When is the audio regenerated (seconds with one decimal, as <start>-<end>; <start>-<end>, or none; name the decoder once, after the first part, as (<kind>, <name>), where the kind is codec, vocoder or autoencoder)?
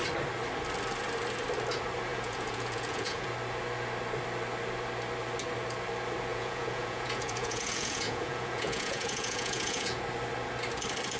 2.1-3.3 (vocoder, Vocos); 6.3-10.0